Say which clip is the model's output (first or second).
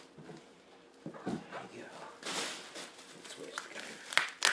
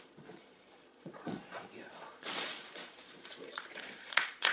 second